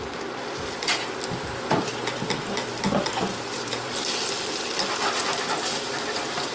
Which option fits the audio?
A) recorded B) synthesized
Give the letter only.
B